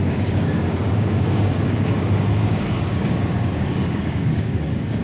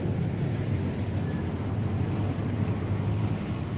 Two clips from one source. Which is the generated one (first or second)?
first